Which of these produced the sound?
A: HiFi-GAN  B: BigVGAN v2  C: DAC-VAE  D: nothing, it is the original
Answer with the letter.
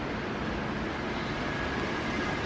D